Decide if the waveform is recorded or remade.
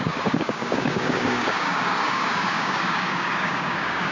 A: remade